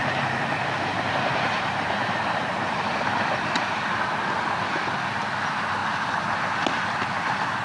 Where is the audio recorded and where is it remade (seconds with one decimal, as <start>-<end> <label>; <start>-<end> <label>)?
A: 0.0-2.9 remade; 2.9-7.6 recorded